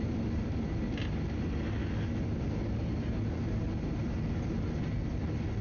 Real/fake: real